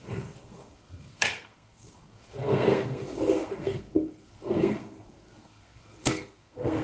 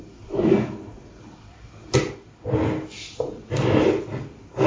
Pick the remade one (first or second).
first